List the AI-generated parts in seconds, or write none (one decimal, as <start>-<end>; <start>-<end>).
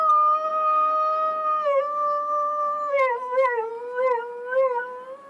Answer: 0.5-3.7